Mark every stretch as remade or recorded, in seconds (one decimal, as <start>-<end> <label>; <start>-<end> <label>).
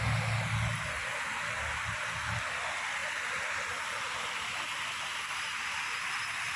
0.0-6.6 recorded